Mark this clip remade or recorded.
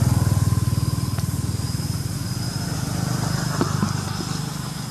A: recorded